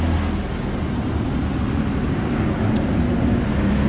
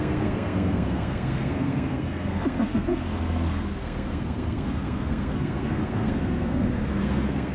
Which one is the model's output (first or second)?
second